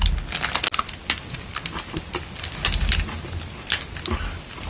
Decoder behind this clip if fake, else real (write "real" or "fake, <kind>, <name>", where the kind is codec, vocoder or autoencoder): real